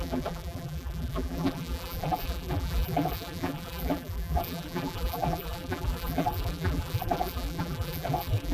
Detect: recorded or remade remade